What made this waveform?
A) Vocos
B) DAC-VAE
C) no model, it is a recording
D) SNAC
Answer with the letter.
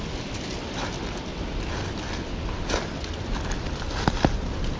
C